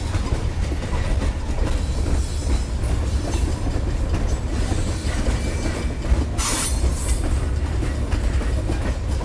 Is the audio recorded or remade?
recorded